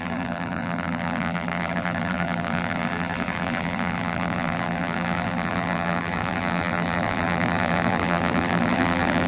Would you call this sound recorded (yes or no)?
no